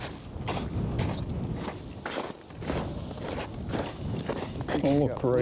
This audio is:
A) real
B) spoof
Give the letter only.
A